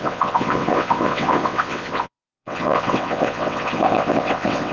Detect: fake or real fake